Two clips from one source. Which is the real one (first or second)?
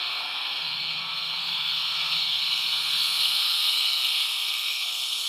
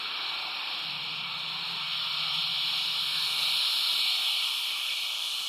second